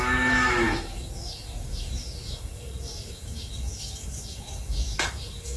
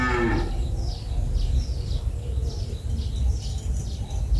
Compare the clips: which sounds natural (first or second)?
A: second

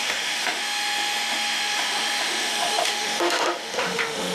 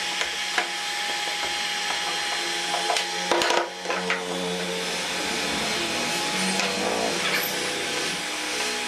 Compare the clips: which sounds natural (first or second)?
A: second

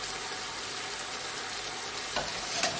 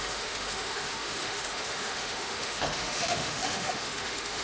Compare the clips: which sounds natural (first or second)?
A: first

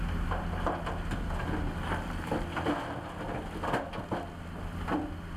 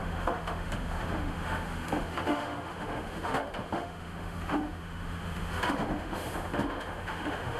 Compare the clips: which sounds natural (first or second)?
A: first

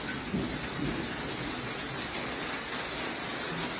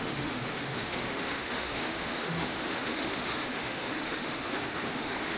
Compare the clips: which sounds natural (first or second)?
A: first